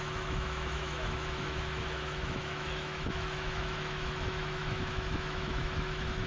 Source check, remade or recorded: remade